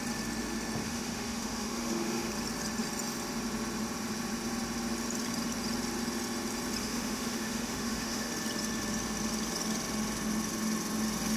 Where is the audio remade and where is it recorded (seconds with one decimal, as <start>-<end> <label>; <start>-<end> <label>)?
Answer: 0.0-0.8 recorded; 0.8-2.3 remade; 2.3-6.8 recorded; 6.8-8.3 remade; 8.3-11.4 recorded